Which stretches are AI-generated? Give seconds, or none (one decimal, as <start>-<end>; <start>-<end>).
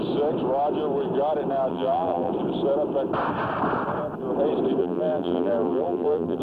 1.7-2.3; 4.8-6.4